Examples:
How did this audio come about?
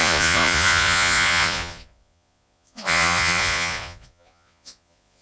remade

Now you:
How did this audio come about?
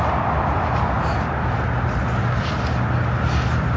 recorded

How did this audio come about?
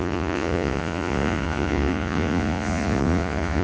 remade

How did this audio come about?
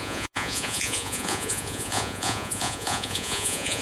remade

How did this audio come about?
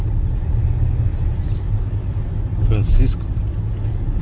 recorded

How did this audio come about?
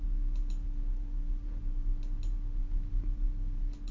recorded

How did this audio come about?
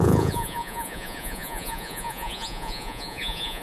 remade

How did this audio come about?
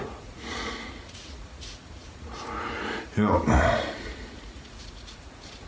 remade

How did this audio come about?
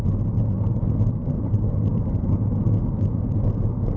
recorded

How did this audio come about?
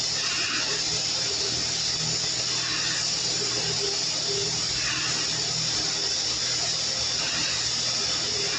recorded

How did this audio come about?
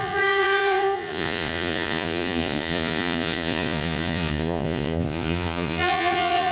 remade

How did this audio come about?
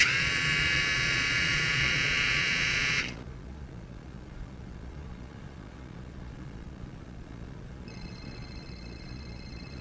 remade